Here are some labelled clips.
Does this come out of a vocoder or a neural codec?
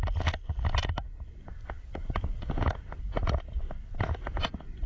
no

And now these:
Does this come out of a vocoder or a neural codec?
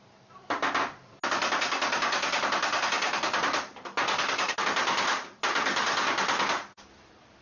no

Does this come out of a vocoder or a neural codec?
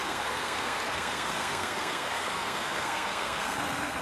yes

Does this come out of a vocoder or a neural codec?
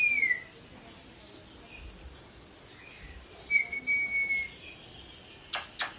no